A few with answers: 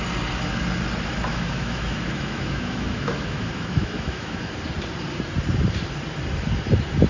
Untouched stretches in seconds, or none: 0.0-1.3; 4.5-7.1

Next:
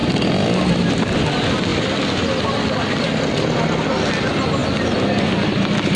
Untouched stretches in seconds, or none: 0.0-6.0